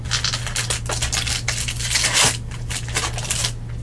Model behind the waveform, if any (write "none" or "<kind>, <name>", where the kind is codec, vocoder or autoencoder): none